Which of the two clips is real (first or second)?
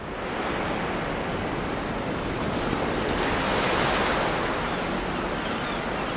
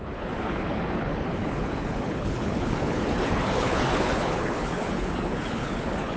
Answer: first